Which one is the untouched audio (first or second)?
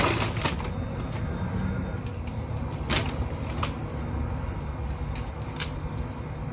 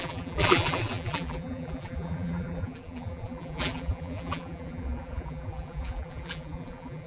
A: first